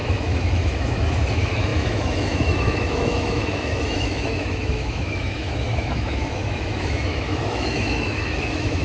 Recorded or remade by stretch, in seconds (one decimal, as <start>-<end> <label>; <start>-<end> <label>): 0.0-8.8 remade